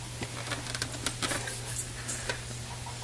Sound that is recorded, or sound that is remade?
recorded